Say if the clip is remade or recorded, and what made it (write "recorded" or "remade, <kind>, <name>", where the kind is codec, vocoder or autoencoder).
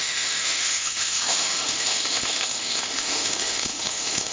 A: remade, autoencoder, DAC-VAE